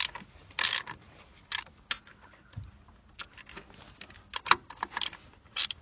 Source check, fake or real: real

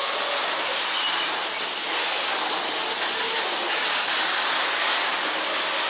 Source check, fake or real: real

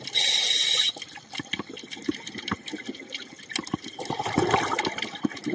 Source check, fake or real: real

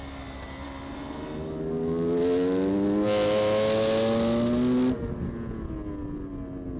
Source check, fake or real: real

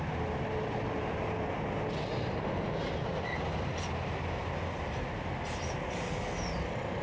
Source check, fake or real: real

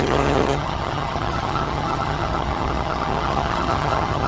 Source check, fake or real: fake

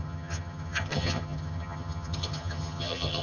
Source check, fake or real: fake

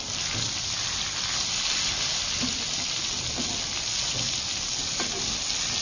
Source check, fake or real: real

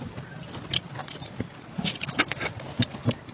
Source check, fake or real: real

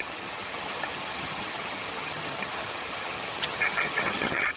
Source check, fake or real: fake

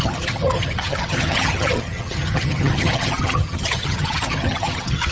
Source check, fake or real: fake